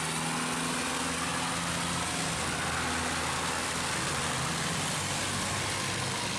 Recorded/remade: recorded